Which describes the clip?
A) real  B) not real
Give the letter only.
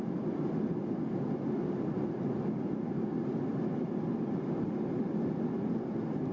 A